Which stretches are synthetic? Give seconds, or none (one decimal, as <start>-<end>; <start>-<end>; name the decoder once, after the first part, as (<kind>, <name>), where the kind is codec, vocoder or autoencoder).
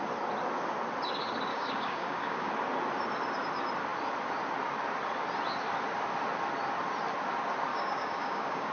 1.5-2.5 (codec, DAC); 7.7-8.7